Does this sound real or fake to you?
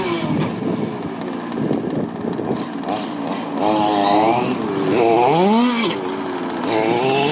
real